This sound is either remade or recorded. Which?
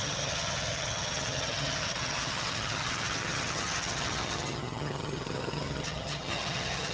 remade